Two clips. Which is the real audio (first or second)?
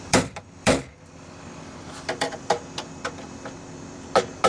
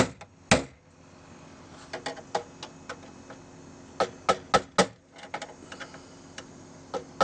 second